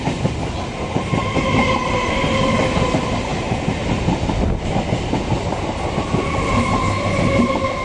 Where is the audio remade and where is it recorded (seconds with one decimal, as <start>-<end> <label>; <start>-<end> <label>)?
0.0-3.3 remade; 3.3-5.5 recorded; 5.5-7.8 remade